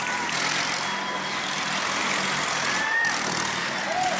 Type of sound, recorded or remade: recorded